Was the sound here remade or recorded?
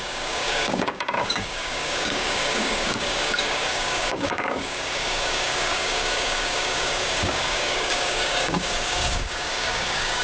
remade